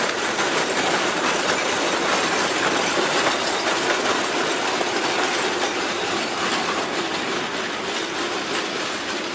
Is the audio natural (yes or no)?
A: yes